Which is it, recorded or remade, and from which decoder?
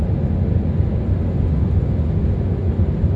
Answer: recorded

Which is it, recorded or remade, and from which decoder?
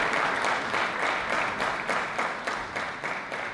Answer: recorded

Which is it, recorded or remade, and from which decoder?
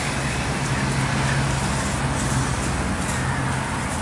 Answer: recorded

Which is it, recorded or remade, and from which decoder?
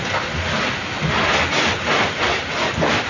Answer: recorded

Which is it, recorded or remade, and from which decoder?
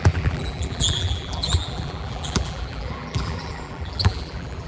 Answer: remade, vocoder, BigVGAN v2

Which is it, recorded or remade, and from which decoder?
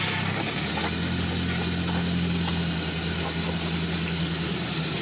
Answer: recorded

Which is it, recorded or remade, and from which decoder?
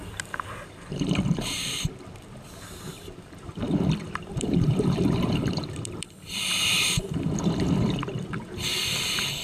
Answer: remade, vocoder, BigVGAN v2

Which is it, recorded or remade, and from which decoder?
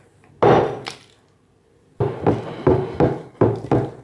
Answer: recorded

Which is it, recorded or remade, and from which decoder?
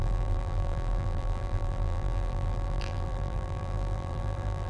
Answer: remade, vocoder, BigVGAN v2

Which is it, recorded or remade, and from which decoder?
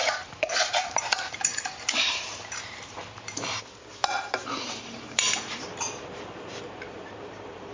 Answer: remade, vocoder, BigVGAN v2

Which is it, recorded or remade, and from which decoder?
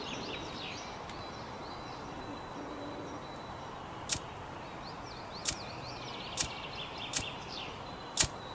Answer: recorded